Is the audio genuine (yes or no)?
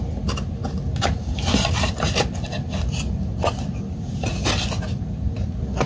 yes